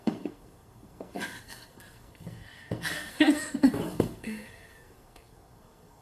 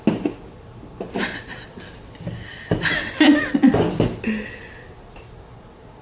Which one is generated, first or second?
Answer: first